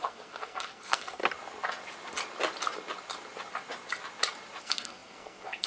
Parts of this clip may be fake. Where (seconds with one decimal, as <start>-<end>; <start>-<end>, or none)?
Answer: 0.0-1.2; 4.6-5.7